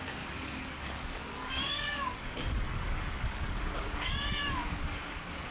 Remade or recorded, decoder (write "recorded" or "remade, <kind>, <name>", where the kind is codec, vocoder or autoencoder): remade, codec, DAC